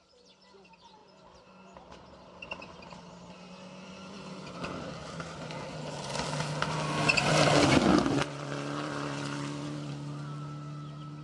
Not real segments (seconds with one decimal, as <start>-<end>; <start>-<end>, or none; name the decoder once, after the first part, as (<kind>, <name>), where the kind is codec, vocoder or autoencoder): none